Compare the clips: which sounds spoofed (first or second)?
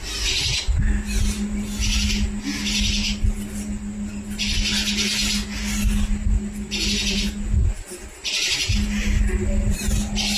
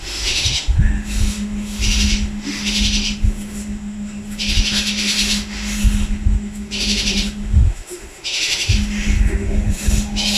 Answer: second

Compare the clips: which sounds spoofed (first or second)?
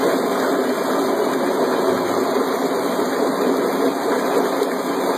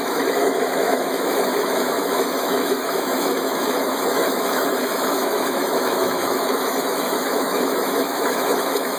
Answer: second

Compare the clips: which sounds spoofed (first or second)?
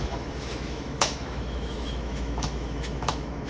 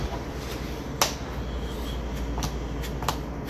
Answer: first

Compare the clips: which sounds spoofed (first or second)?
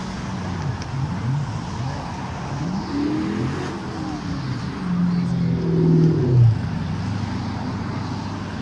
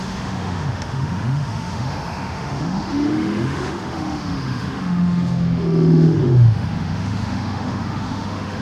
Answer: second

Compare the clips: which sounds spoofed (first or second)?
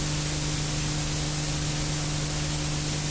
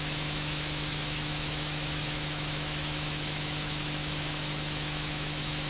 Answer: second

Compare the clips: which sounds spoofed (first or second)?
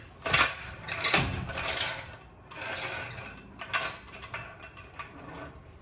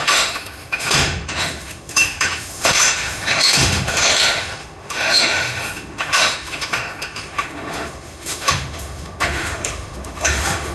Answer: second